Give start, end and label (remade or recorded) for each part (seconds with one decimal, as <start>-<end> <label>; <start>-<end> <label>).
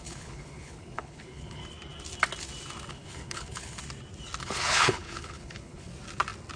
0.0-1.6 remade; 1.6-2.9 recorded; 2.9-3.8 remade; 3.8-4.4 recorded; 4.4-5.9 remade; 5.9-6.6 recorded